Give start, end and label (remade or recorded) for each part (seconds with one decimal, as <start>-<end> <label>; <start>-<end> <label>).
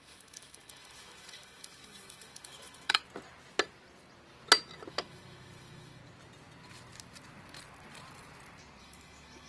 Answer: 0.0-3.0 remade; 3.0-4.9 recorded; 4.9-6.0 remade; 6.0-8.8 recorded; 8.8-9.5 remade